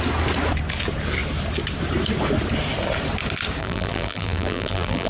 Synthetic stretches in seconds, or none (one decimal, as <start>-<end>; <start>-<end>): 3.6-5.1